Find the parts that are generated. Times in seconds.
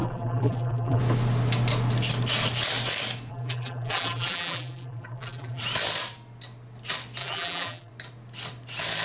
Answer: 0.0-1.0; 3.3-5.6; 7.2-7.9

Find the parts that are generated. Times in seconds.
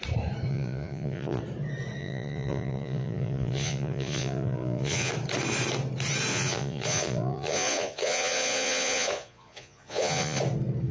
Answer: 0.5-1.4; 2.0-5.1; 6.3-10.4